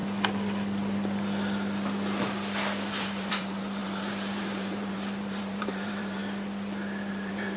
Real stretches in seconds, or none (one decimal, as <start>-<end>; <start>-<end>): 0.0-2.9; 6.2-7.1